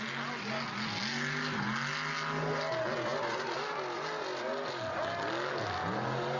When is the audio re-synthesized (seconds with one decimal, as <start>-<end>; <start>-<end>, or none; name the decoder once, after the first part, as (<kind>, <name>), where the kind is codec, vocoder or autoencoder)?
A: none